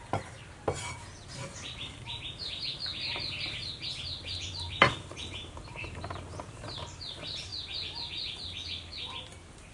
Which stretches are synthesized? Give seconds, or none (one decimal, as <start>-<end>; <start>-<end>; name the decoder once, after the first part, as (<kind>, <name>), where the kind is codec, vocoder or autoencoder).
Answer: 0.0-7.5 (vocoder, BigVGAN v2); 8.9-9.7